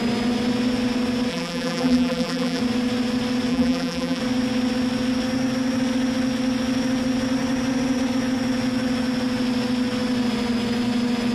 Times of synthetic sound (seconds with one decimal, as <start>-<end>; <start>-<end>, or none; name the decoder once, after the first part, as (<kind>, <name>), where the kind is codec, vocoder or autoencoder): 1.3-2.6 (vocoder, BigVGAN v2); 3.5-4.2